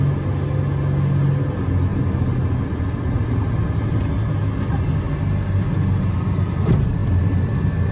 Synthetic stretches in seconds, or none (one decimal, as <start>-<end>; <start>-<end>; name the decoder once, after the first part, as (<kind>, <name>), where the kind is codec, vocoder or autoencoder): none